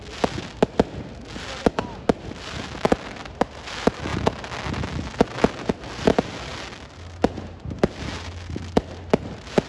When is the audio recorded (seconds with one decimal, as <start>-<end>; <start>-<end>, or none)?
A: 0.0-9.7